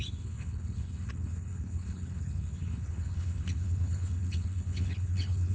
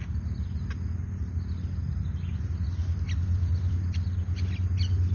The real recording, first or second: second